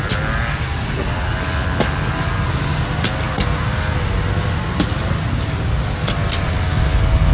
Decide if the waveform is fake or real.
real